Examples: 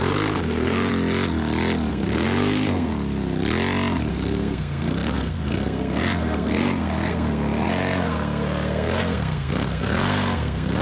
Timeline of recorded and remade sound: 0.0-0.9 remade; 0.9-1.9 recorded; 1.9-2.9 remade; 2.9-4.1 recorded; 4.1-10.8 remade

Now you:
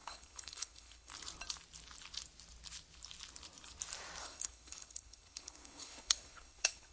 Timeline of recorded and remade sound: 0.0-1.1 remade; 1.1-4.2 recorded; 4.2-6.9 remade

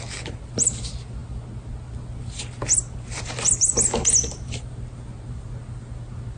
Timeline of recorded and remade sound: 0.0-6.4 recorded

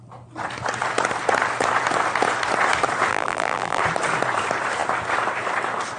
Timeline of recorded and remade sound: 0.0-3.1 recorded; 3.1-3.8 remade; 3.8-6.0 recorded

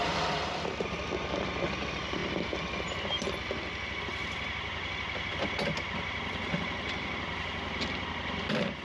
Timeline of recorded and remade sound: 0.0-1.1 remade; 1.1-8.8 recorded

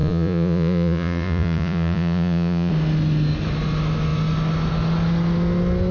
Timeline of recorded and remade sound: 0.0-2.7 remade; 2.7-5.9 recorded